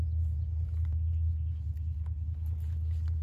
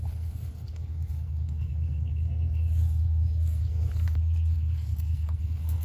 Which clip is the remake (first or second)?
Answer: second